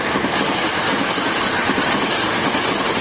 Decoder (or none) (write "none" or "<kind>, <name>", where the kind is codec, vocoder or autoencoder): none